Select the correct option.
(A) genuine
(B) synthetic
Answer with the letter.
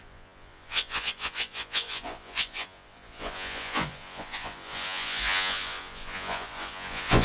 B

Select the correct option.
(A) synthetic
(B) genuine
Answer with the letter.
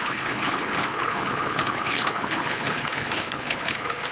A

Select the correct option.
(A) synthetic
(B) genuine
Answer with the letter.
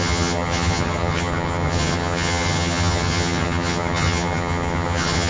A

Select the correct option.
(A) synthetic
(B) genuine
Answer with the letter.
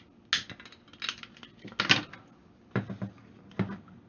B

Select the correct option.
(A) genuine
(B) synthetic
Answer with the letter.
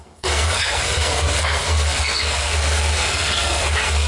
B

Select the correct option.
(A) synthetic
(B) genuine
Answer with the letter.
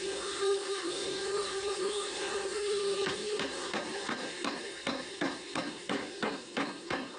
A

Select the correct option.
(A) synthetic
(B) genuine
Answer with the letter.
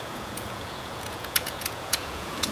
A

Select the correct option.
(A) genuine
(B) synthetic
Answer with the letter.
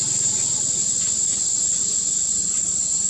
A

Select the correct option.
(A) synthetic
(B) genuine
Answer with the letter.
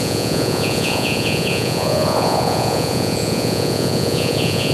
A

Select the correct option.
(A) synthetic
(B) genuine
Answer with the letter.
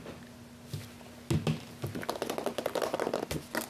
B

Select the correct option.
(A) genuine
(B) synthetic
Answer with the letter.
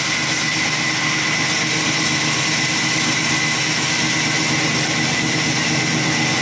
A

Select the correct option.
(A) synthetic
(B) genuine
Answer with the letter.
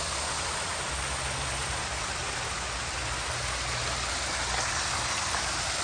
B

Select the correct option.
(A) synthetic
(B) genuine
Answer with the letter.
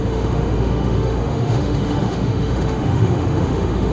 A